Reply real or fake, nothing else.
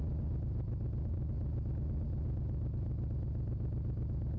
real